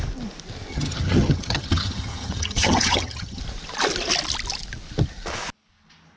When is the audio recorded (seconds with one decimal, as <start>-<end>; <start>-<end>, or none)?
0.0-0.7; 3.4-6.2